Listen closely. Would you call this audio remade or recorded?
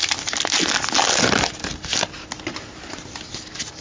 recorded